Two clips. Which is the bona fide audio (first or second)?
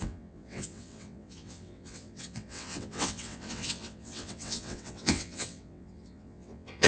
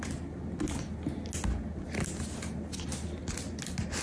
second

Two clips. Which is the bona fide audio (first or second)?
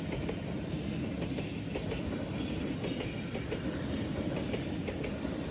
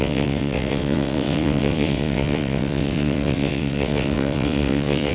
first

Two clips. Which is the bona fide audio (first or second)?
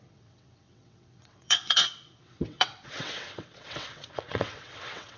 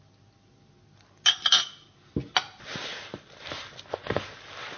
second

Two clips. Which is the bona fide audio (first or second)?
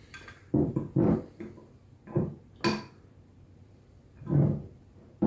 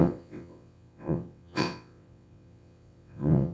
first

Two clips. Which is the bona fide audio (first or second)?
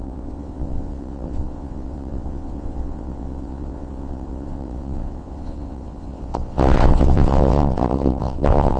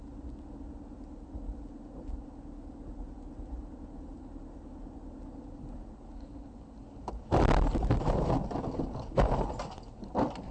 second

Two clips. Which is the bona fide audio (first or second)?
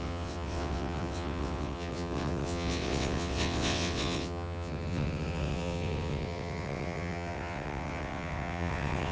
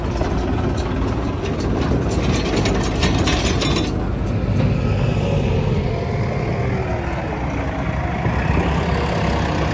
second